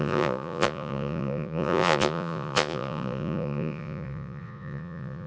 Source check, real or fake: fake